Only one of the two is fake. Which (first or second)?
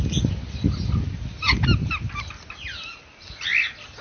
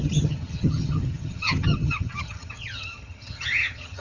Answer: second